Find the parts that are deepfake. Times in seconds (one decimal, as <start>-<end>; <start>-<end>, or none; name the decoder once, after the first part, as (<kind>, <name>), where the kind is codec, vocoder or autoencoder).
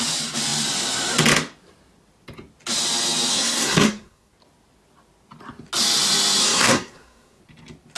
3.3-4.3 (codec, SNAC); 6.4-7.4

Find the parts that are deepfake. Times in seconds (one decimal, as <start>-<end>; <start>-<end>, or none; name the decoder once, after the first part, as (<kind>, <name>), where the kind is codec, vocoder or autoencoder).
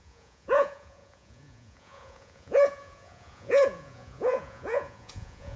0.0-5.6 (vocoder, Vocos)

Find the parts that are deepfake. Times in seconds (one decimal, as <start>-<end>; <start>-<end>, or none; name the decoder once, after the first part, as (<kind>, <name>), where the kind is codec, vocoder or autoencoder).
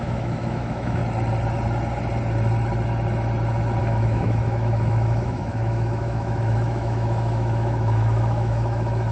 0.0-1.0 (autoencoder, DAC-VAE); 3.8-9.1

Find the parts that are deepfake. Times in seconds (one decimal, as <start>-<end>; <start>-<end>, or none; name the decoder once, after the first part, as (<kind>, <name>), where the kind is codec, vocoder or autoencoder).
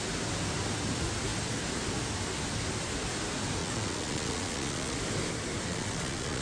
3.6-5.0 (vocoder, Vocos); 5.7-6.4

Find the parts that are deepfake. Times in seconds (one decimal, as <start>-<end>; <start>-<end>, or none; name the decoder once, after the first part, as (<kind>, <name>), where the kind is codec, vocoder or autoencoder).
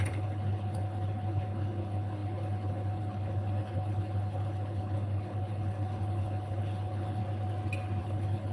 0.0-7.2 (codec, HILCodec); 8.0-8.5